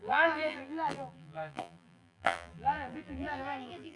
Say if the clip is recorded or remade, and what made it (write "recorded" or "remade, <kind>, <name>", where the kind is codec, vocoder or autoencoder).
remade, vocoder, BigVGAN v2